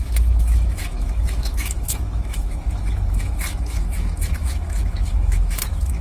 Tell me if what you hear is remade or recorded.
remade